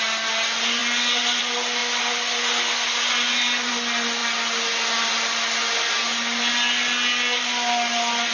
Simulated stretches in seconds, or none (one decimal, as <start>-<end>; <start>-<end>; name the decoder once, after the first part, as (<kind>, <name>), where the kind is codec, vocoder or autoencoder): none